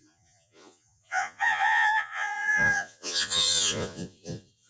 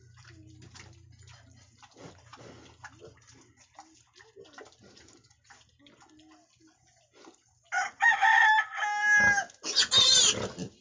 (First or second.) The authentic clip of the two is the second